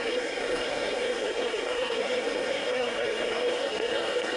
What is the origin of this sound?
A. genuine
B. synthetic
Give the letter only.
B